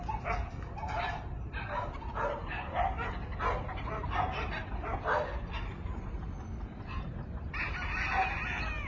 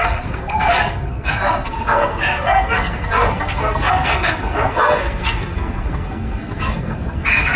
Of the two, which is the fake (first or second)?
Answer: second